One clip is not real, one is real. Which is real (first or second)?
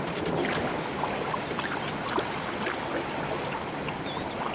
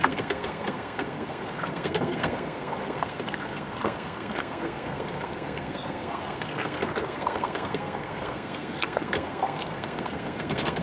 first